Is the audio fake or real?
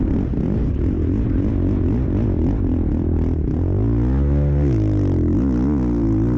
real